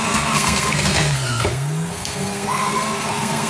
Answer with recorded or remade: remade